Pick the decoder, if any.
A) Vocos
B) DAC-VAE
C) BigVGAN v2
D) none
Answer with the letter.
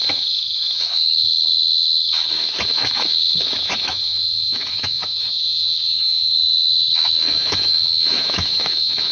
B